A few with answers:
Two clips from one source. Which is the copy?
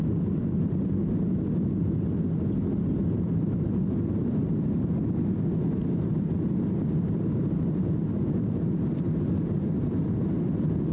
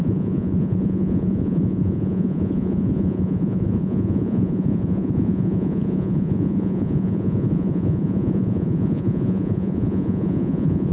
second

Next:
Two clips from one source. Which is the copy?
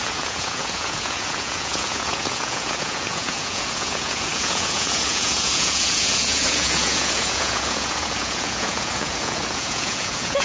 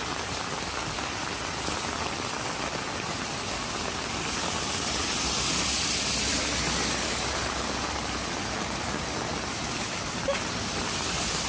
first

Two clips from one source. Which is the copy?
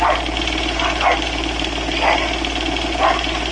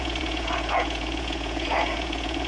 second